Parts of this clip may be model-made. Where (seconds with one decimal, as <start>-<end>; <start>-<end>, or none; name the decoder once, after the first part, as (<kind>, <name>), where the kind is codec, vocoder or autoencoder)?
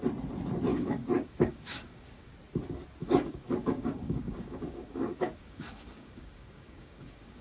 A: 0.7-2.3 (codec, DAC); 3.0-7.4